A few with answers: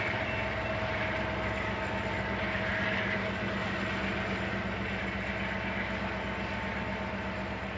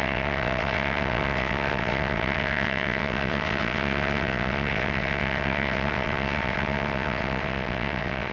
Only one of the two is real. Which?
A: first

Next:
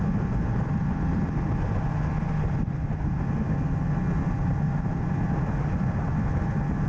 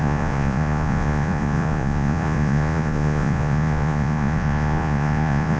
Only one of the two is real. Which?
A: first